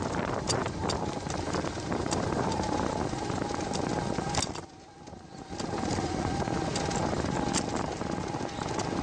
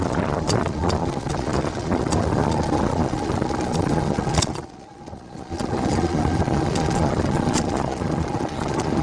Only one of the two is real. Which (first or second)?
first